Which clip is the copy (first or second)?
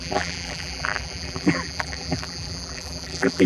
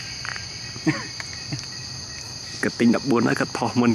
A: first